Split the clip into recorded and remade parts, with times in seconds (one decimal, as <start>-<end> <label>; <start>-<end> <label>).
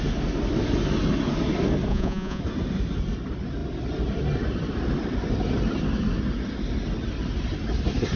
0.0-1.9 recorded; 1.9-2.4 remade; 2.4-8.2 recorded